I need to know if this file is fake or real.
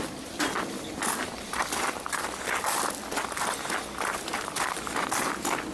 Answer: real